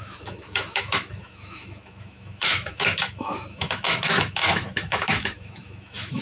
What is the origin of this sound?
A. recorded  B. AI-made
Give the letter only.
B